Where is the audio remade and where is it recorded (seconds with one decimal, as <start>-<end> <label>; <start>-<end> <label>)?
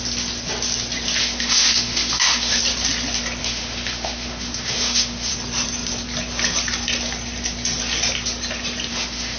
0.0-1.2 recorded; 1.2-2.6 remade; 2.6-3.4 recorded; 3.4-5.3 remade; 5.3-8.9 recorded; 8.9-9.4 remade